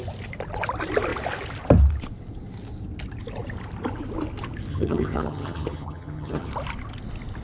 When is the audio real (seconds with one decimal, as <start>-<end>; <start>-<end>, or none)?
0.0-4.7; 6.5-7.4